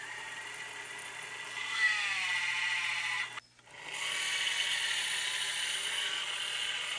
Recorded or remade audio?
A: recorded